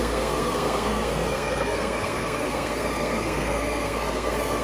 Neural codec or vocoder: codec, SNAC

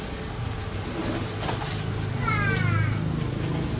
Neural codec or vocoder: none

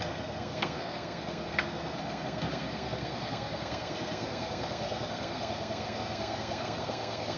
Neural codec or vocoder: codec, SNAC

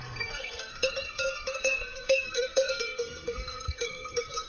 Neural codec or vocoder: codec, SNAC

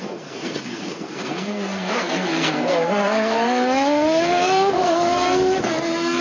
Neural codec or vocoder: codec, SNAC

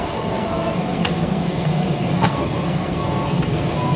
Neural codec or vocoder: codec, SNAC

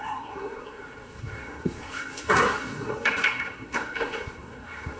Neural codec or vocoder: codec, SNAC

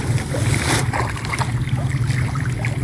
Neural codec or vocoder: none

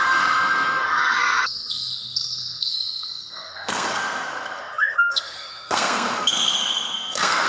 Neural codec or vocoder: codec, SNAC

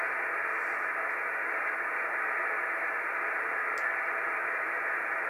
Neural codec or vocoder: none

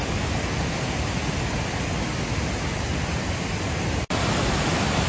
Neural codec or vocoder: none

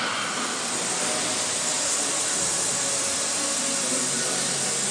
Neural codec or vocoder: none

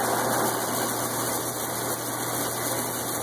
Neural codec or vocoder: none